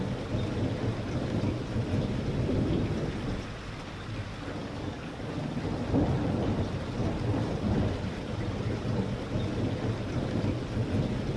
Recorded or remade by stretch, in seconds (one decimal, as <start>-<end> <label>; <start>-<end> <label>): 0.0-4.6 recorded; 4.6-5.3 remade; 5.3-11.4 recorded